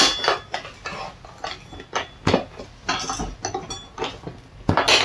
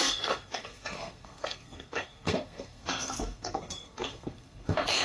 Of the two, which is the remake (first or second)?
second